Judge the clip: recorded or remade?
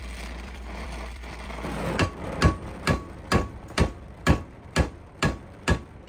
remade